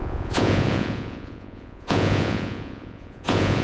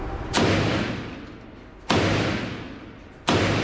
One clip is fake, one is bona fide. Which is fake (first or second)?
first